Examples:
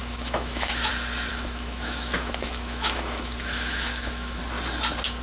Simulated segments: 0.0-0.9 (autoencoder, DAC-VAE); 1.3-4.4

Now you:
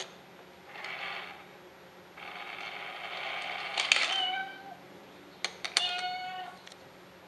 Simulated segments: none

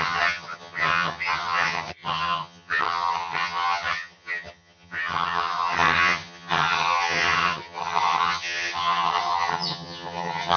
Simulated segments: 0.0-10.6 (vocoder, HiFi-GAN)

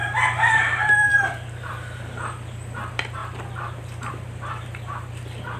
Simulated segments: 0.5-1.1 (vocoder, BigVGAN v2); 1.7-3.2; 4.1-5.6

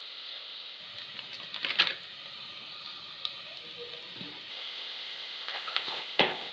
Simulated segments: 0.0-0.8 (codec, ZipCodec); 4.5-6.5

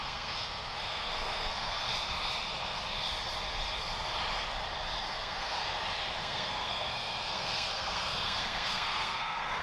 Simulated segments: 0.0-1.9 (codec, SNAC); 5.1-5.6; 6.2-9.6

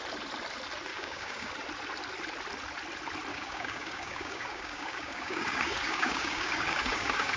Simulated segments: 0.9-1.5 (codec, DAC); 3.3-7.4

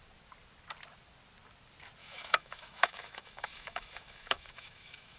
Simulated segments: 2.0-5.2 (autoencoder, DAC-VAE)